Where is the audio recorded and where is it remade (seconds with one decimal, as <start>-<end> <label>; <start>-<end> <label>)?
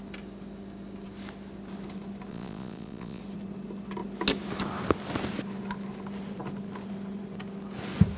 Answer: 0.0-2.3 recorded; 2.3-3.2 remade; 3.2-8.2 recorded